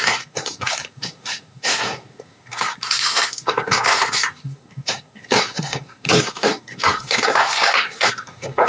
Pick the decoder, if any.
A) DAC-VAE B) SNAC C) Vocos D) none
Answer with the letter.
B